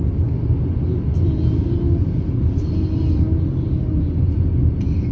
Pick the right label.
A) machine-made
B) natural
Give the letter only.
B